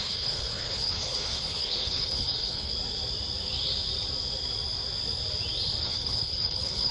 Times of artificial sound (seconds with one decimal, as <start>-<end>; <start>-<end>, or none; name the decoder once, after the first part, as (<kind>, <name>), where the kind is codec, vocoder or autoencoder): 0.0-2.7 (codec, HILCodec); 5.8-6.9